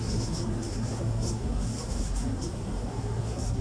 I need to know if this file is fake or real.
fake